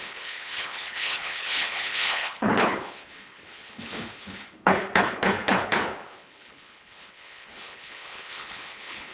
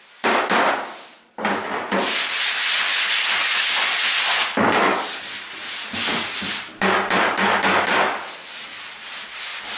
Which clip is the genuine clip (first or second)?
second